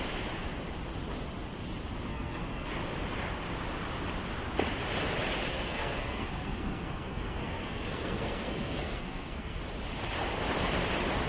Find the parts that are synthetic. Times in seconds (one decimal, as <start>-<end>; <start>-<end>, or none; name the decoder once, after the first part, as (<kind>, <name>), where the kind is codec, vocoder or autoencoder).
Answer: 2.1-2.7 (codec, SNAC); 5.5-9.6

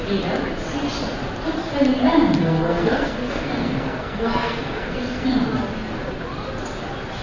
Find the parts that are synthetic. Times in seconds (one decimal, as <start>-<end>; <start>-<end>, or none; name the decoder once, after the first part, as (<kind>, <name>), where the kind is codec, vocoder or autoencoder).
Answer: 2.4-5.3 (codec, SNAC)

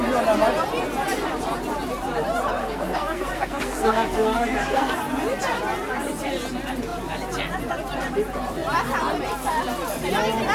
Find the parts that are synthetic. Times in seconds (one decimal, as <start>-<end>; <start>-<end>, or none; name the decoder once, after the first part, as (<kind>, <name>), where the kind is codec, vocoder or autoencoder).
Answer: 2.6-5.0 (codec, SNAC)

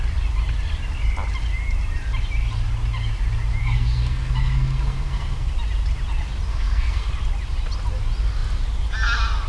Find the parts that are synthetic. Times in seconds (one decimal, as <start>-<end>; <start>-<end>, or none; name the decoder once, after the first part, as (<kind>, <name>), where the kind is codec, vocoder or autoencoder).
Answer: 3.6-5.5 (codec, SNAC); 6.5-7.1

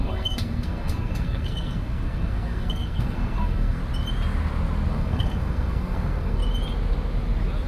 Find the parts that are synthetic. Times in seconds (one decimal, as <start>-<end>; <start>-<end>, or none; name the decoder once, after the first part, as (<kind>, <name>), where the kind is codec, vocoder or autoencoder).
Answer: 0.0-3.8 (codec, SNAC); 4.9-6.4

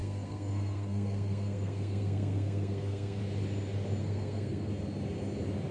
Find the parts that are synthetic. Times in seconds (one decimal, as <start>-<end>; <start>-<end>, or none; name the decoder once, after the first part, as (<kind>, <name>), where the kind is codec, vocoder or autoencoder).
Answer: 0.0-3.2 (codec, SNAC); 4.0-4.7

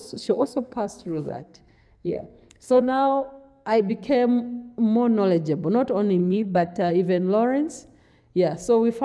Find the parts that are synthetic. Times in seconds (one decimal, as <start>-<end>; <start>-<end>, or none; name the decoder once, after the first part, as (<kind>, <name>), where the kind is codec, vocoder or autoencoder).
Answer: 0.0-3.9 (codec, SNAC); 6.2-6.9

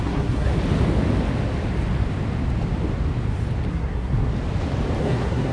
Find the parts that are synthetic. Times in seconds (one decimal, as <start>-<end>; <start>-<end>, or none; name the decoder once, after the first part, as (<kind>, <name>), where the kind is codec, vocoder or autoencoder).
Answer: 0.0-0.5 (codec, SNAC); 3.7-4.3; 5.0-5.5